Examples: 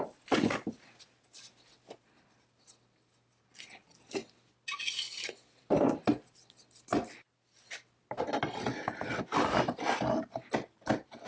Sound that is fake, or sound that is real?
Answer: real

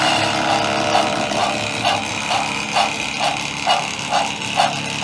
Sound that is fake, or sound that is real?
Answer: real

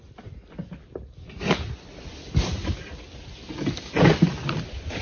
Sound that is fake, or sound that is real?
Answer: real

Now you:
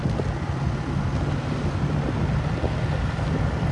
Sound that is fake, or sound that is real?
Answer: real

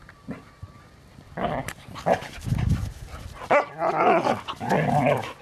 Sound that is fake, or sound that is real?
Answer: real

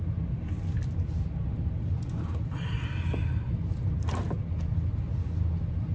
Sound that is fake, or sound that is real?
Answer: real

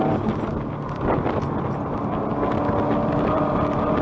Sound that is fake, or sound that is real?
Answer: real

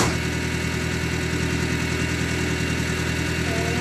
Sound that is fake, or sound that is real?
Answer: real